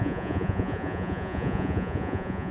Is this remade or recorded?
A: remade